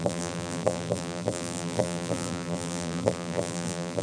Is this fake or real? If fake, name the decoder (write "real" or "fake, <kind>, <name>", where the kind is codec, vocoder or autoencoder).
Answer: fake, vocoder, BigVGAN v2